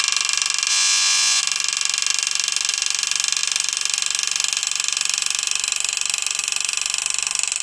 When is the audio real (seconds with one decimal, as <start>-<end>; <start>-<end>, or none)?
0.0-0.7; 1.4-7.6